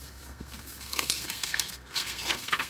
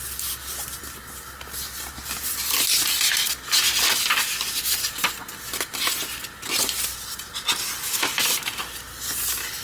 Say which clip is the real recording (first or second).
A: second